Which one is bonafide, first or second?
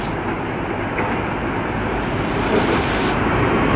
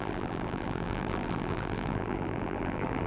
first